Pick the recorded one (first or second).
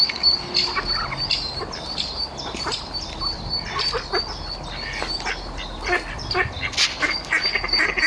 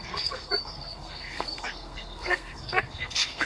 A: first